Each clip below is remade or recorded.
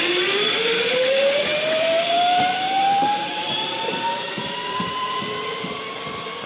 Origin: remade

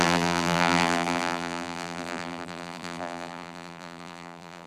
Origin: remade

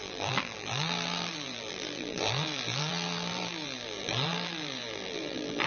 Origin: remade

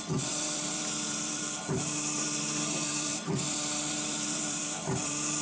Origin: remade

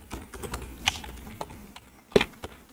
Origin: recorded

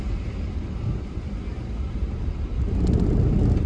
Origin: recorded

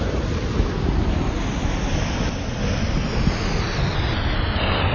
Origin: recorded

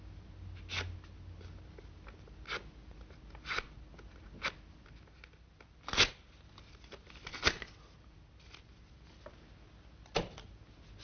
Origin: recorded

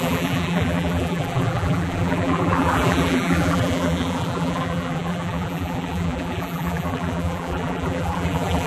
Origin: remade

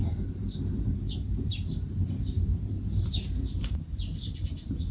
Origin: remade